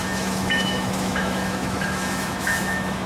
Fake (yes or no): yes